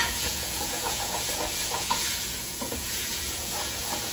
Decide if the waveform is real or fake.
fake